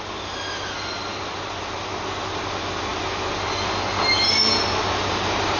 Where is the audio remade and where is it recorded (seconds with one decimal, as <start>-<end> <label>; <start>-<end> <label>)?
0.0-1.1 recorded; 1.1-1.6 remade; 1.6-5.6 recorded

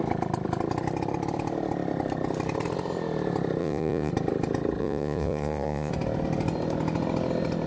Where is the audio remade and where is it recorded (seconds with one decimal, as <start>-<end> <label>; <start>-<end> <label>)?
0.0-3.6 recorded; 3.6-4.1 remade; 4.1-4.8 recorded; 4.8-5.9 remade; 5.9-7.7 recorded

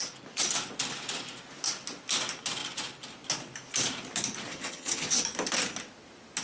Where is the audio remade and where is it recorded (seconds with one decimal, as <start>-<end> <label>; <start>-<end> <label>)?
0.0-4.5 recorded; 4.5-5.2 remade; 5.2-6.4 recorded

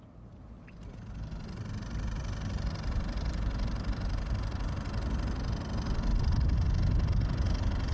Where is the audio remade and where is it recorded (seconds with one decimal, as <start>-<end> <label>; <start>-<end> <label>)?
0.0-7.9 recorded

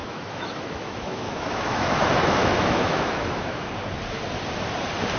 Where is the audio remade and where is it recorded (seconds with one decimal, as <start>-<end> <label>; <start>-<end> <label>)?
0.0-2.0 remade; 2.0-2.4 recorded; 2.4-3.7 remade; 3.7-5.2 recorded

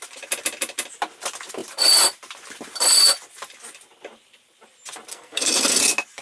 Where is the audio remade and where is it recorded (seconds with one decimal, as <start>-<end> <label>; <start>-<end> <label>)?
0.0-5.1 recorded; 5.1-5.8 remade; 5.8-6.2 recorded

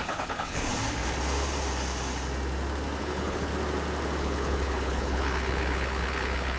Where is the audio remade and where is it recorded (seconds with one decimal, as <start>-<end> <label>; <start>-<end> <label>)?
0.0-0.7 remade; 0.7-3.0 recorded; 3.0-3.5 remade; 3.5-4.2 recorded; 4.2-6.6 remade

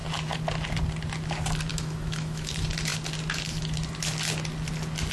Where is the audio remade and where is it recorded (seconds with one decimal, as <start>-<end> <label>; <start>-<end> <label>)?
0.0-1.7 recorded; 1.7-2.5 remade; 2.5-5.1 recorded